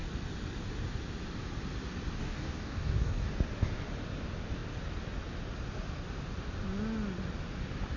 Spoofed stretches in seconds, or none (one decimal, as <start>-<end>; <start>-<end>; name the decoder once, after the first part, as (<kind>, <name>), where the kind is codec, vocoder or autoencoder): 2.2-3.3 (codec, DAC)